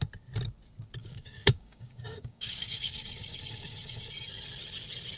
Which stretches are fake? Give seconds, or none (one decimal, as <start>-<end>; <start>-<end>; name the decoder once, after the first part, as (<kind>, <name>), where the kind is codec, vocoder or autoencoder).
1.0-4.1 (codec, DAC)